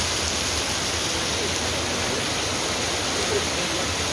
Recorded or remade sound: recorded